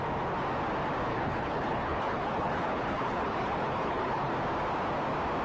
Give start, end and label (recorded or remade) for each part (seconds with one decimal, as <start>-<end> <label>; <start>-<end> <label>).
0.0-1.1 recorded; 1.1-4.3 remade; 4.3-5.4 recorded